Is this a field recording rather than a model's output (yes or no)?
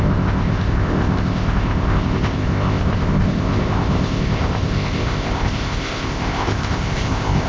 no